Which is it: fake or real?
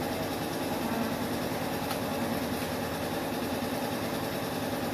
real